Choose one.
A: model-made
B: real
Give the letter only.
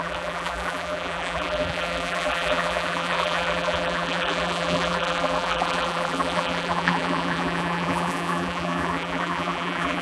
A